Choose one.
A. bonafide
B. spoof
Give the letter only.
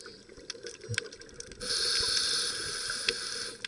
A